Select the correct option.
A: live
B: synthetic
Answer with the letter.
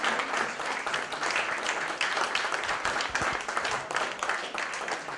A